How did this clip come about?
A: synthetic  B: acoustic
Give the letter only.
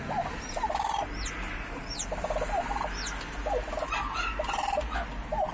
B